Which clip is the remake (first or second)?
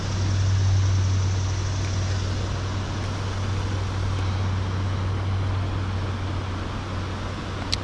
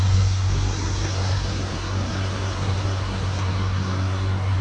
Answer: second